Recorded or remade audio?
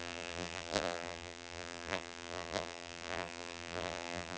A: remade